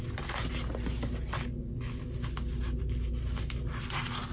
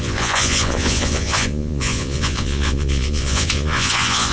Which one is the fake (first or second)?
second